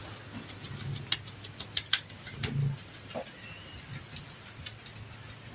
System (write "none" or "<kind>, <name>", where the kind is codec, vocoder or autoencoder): none